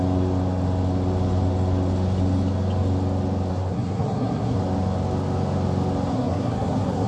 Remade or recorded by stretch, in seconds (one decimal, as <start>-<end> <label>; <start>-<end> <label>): 0.0-3.5 recorded; 3.5-4.6 remade; 4.6-6.1 recorded; 6.1-7.1 remade